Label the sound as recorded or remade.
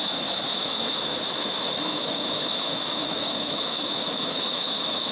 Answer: remade